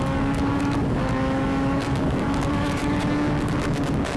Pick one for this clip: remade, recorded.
remade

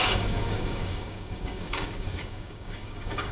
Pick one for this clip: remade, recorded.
remade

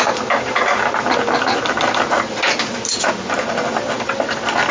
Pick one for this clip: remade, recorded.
recorded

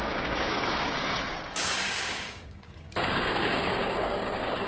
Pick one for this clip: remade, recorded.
remade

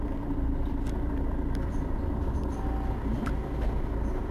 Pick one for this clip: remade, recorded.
recorded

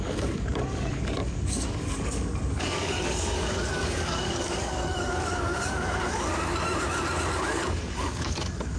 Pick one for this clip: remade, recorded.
remade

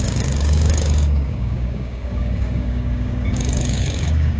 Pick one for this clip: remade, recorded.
remade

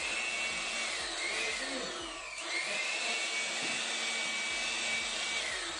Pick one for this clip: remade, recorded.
recorded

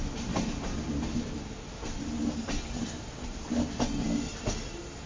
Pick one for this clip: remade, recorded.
recorded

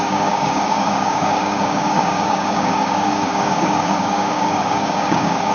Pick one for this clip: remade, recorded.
remade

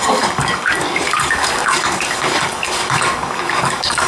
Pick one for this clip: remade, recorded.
remade